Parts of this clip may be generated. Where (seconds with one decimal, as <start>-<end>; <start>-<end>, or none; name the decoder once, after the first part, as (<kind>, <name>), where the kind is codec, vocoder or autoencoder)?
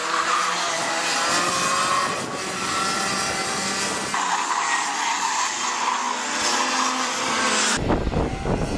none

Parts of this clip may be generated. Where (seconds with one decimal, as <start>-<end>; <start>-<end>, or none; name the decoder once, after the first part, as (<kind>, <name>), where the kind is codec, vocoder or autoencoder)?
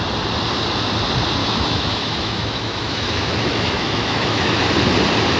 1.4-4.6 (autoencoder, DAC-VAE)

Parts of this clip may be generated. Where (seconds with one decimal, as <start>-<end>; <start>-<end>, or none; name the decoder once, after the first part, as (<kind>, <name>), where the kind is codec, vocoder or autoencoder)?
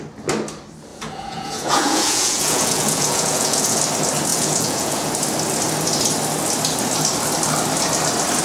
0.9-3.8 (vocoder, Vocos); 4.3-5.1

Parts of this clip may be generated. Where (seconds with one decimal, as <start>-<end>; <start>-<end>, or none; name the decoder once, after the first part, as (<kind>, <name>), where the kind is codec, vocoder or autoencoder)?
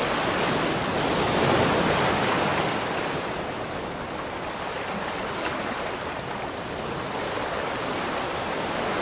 none